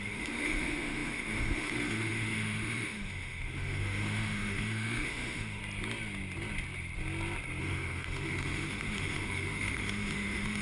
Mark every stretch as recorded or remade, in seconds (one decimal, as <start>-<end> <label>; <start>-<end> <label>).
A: 0.0-5.6 remade; 5.6-7.6 recorded; 7.6-10.6 remade